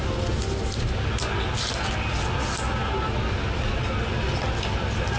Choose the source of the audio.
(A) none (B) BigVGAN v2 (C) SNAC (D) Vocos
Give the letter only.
A